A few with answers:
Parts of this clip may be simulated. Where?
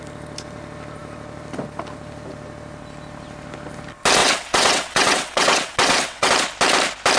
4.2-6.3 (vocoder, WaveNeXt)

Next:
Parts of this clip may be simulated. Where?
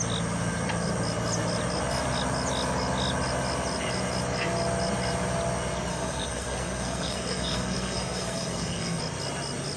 5.9-9.0 (codec, SNAC)